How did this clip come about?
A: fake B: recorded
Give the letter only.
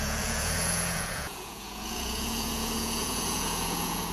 A